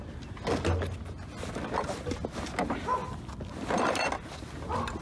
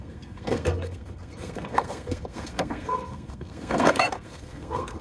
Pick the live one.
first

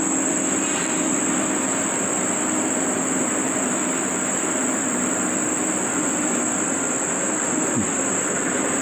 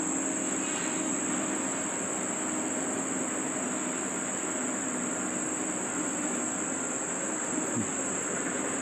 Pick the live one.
second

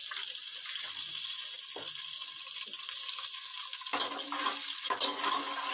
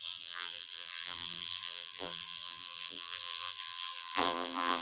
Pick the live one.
first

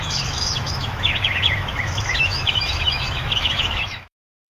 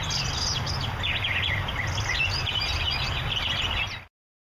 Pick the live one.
second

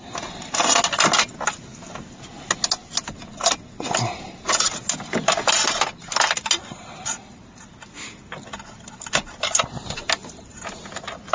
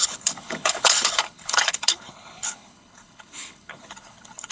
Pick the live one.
first